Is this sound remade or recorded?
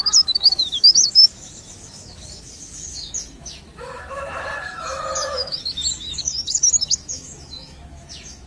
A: remade